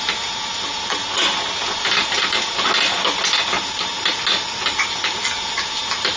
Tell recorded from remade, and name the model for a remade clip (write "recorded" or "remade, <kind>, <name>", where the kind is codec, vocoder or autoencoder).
recorded